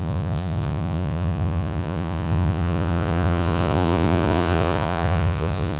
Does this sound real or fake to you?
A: fake